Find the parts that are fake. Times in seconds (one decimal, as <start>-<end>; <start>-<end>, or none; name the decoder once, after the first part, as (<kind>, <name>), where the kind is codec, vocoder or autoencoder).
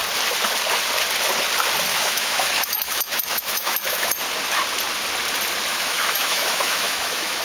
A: 1.9-4.1 (autoencoder, DAC-VAE); 5.7-7.4